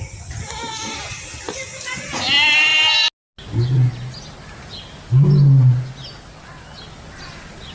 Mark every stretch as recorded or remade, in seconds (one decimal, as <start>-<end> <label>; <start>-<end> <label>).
0.0-7.7 recorded